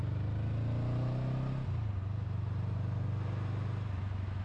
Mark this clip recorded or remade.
recorded